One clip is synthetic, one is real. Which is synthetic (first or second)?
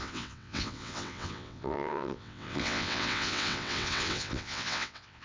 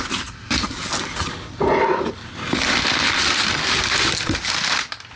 first